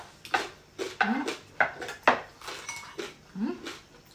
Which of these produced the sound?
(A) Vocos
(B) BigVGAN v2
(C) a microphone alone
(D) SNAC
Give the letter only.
C